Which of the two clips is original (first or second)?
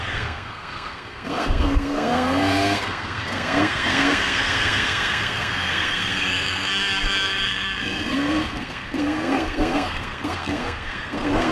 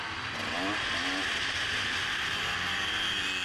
second